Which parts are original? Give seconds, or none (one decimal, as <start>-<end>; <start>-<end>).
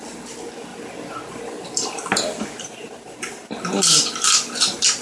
0.0-5.0